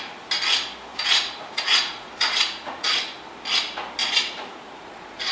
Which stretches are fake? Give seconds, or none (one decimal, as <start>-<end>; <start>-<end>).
0.9-3.0; 4.0-5.3